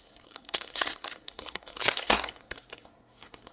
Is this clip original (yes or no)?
no